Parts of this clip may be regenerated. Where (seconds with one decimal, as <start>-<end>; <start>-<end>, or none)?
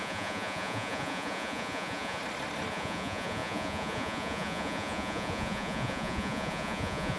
0.0-2.2; 2.7-7.2